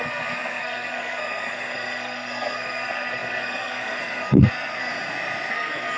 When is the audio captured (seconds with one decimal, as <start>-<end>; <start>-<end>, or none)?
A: 4.9-5.5